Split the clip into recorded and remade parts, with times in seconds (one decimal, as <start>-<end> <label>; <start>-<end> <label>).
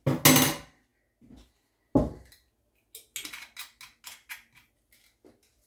0.0-5.7 recorded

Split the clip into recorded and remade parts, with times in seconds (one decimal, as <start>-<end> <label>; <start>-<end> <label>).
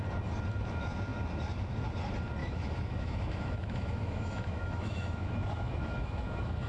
0.0-2.4 recorded; 2.4-6.7 remade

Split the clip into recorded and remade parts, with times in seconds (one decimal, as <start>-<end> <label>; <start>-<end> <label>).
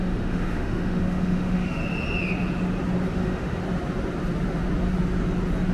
0.0-1.8 remade; 1.8-3.1 recorded; 3.1-3.6 remade; 3.6-5.7 recorded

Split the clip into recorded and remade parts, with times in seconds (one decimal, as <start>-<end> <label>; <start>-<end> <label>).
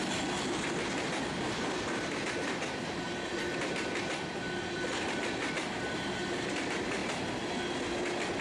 0.0-8.4 recorded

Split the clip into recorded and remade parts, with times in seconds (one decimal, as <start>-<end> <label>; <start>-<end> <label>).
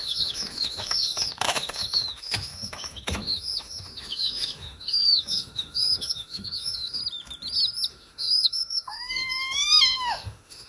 0.0-7.0 remade; 7.0-7.9 recorded; 7.9-10.7 remade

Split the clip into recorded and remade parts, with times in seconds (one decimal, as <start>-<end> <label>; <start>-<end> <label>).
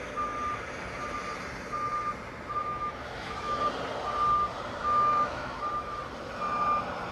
0.0-2.6 recorded; 2.6-3.6 remade; 3.6-4.8 recorded; 4.8-5.6 remade; 5.6-7.1 recorded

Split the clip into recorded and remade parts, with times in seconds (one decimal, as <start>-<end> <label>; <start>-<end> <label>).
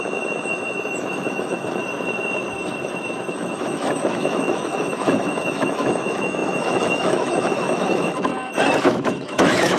0.0-1.8 remade; 1.8-3.3 recorded; 3.3-8.3 remade; 8.3-8.8 recorded; 8.8-9.8 remade